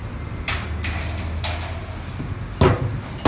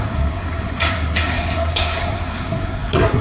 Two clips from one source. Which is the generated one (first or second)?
second